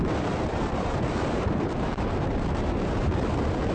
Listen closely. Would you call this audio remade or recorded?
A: remade